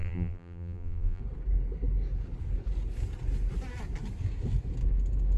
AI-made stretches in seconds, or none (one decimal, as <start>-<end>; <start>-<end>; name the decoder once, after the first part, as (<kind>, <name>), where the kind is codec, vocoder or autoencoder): 0.0-1.2 (vocoder, BigVGAN v2)